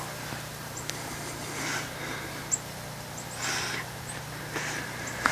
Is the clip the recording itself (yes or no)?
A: yes